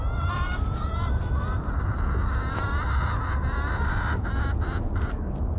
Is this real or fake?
real